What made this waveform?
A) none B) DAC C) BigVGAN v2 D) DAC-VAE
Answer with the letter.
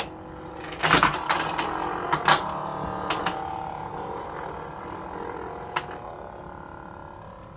A